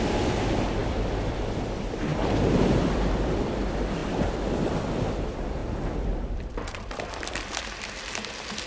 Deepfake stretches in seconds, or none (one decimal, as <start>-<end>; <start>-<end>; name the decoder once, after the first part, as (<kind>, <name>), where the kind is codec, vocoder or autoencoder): 0.8-1.6 (vocoder, BigVGAN v2); 2.1-3.4; 5.6-7.8